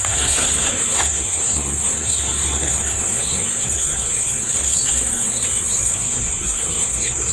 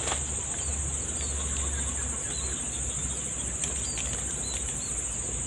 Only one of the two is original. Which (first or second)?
second